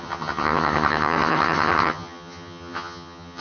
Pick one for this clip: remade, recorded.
remade